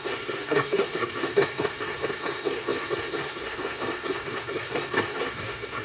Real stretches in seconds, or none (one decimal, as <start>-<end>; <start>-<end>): none